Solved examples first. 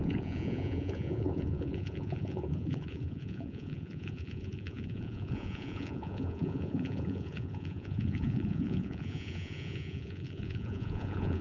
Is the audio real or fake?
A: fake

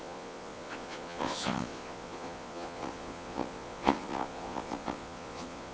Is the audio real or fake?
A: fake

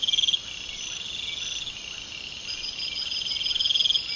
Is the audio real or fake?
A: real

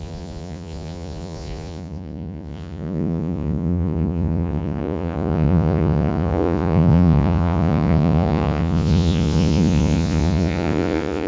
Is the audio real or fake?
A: fake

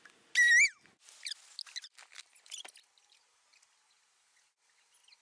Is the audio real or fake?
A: real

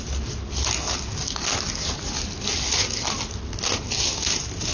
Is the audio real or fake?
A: real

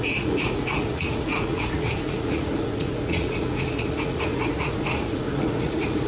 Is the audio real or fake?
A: fake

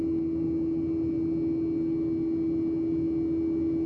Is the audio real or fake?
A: real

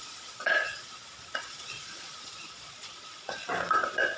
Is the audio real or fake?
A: fake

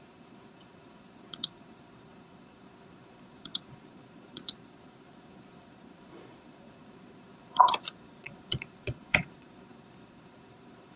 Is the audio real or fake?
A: fake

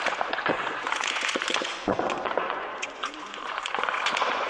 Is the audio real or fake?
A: fake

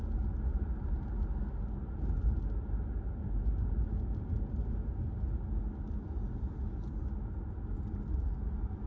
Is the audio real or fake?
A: real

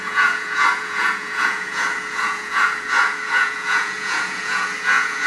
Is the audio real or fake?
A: fake